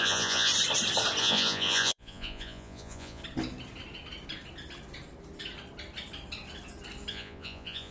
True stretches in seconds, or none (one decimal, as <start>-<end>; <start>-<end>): 0.5-1.2; 3.2-7.1